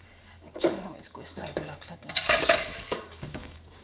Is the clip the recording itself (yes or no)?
no